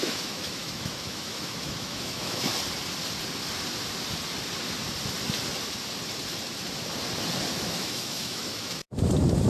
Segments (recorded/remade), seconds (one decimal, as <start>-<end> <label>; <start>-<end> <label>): 0.0-2.5 remade; 2.5-7.5 recorded; 7.5-8.8 remade; 8.8-9.5 recorded